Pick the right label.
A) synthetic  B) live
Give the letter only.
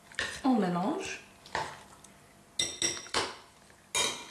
B